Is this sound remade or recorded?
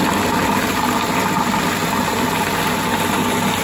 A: recorded